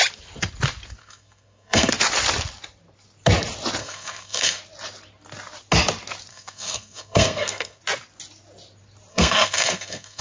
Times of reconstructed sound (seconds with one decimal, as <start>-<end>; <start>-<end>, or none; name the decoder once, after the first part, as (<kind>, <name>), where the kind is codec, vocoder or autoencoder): 1.0-1.9 (codec, SNAC); 3.8-4.6; 6.3-7.8; 9.1-10.2